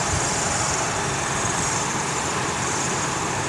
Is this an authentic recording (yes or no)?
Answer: no